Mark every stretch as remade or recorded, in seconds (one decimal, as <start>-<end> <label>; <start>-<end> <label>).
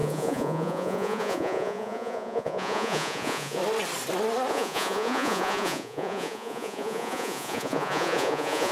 0.0-3.6 remade; 3.6-4.5 recorded; 4.5-8.7 remade